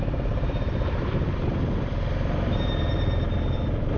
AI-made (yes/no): yes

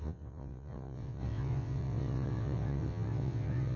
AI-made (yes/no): yes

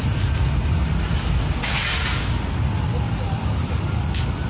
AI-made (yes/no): no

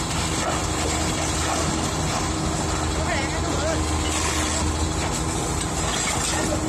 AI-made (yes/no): no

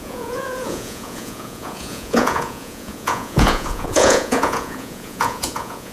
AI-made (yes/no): yes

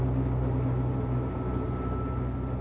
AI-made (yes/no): no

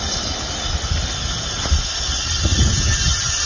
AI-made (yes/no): no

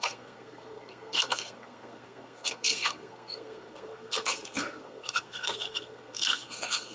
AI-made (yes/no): yes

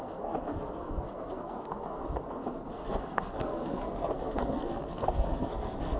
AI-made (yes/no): yes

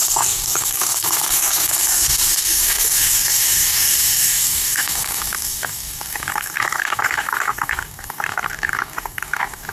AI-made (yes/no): yes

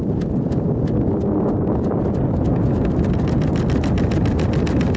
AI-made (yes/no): no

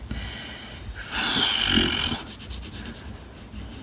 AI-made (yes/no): no